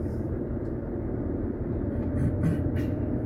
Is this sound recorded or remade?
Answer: remade